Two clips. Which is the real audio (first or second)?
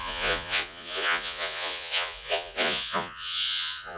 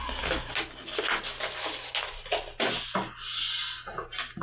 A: second